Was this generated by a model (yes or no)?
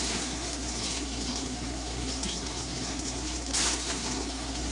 yes